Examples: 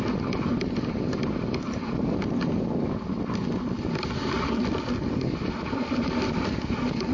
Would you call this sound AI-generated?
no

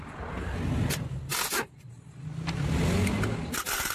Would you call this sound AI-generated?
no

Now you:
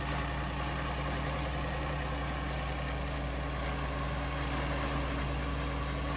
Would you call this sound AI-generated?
no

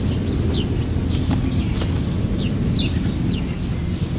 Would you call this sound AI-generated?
no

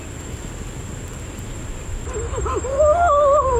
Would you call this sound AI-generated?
no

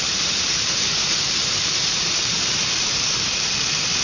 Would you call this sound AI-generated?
yes